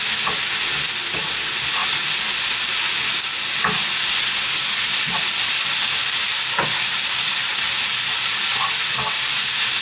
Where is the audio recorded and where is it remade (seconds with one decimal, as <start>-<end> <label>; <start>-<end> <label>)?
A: 0.0-9.8 recorded